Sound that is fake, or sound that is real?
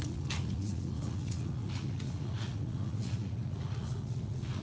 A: fake